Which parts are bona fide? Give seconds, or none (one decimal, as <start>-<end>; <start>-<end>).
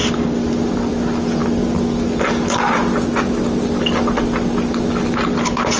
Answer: 0.0-5.8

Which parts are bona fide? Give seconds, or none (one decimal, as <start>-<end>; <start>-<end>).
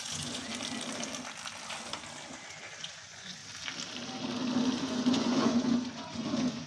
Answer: 0.5-2.8; 3.4-4.8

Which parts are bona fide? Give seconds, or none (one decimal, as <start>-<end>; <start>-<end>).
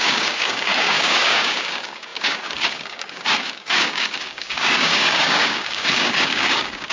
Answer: none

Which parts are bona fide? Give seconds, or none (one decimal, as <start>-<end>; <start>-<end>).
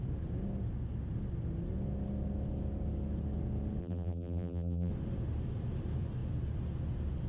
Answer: 0.0-3.8; 4.9-7.3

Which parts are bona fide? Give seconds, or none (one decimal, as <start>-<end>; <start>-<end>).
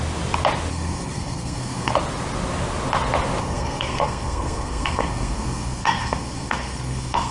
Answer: 0.0-0.7; 1.9-3.4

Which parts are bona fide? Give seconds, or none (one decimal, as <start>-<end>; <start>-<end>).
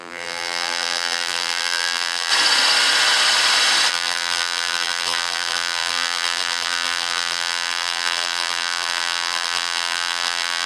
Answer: 2.3-3.9